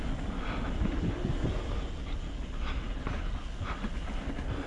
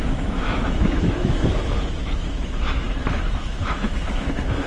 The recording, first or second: first